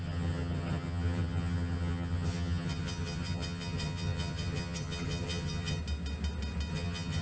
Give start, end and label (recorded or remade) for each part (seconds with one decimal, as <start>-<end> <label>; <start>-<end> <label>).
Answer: 0.0-5.8 remade; 5.8-6.7 recorded; 6.7-7.2 remade